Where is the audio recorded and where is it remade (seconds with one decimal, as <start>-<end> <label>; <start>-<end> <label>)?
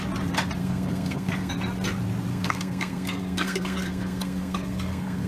0.0-0.6 recorded; 0.6-1.5 remade; 1.5-2.3 recorded; 2.3-5.3 remade